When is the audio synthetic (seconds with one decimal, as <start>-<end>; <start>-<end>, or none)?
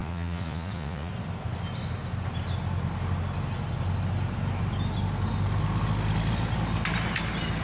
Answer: 0.0-1.1